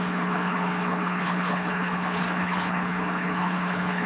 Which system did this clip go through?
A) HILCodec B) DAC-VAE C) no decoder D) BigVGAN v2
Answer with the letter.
A